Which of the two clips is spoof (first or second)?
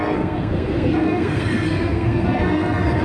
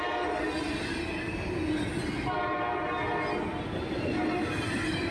first